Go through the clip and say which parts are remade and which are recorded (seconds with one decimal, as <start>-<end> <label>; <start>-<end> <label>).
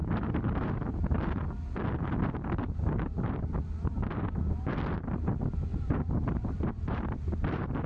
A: 0.0-1.0 remade; 1.0-5.7 recorded; 5.7-7.9 remade